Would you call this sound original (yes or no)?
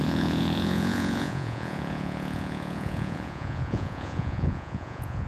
no